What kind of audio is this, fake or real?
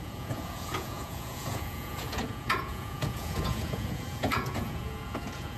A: fake